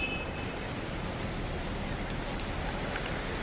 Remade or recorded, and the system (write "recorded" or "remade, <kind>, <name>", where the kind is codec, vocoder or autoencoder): recorded